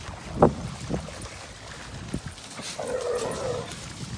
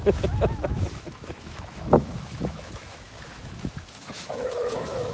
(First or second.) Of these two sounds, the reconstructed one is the second